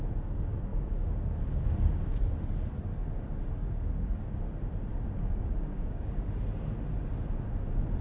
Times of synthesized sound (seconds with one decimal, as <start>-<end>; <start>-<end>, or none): 0.7-2.2; 3.6-4.2; 4.9-6.3